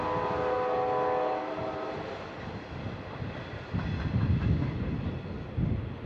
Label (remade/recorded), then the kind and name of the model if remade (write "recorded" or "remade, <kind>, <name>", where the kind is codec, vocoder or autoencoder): recorded